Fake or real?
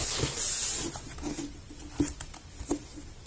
real